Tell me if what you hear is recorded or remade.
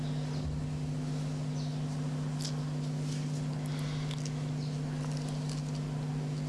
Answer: recorded